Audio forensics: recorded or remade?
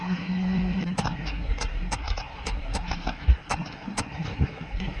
remade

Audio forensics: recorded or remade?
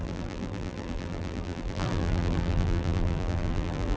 remade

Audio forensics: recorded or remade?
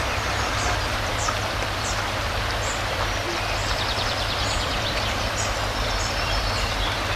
remade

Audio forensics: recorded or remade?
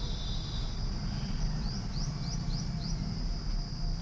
recorded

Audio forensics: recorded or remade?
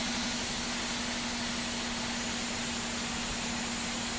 recorded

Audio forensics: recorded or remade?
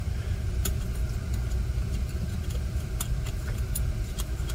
remade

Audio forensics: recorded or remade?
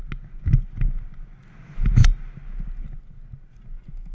recorded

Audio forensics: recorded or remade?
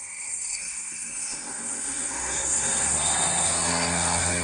remade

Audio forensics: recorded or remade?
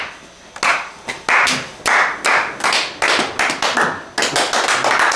recorded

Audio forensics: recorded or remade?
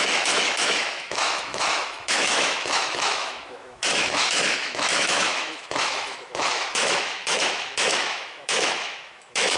remade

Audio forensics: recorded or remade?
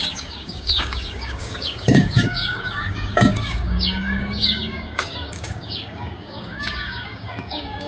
remade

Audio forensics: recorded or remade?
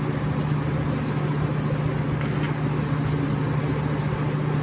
recorded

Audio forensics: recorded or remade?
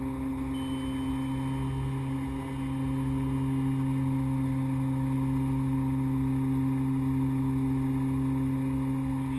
recorded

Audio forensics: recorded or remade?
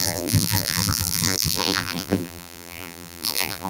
remade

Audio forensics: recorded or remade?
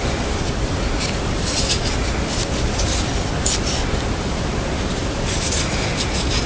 recorded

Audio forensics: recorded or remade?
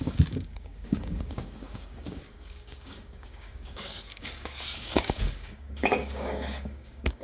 remade